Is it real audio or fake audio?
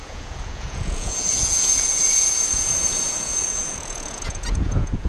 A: fake